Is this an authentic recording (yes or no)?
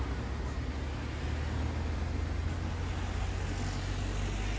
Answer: yes